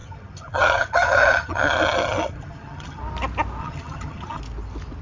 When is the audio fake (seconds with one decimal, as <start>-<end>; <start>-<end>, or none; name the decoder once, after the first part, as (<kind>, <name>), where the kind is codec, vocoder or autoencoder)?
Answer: 0.0-3.0 (vocoder, HiFi-GAN); 3.6-4.4